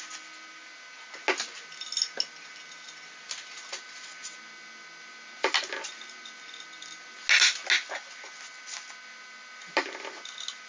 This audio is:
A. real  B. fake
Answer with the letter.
A